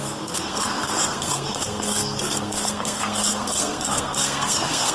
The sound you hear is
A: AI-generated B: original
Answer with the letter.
A